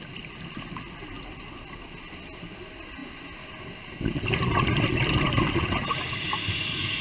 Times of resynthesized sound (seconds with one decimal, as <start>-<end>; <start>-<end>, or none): none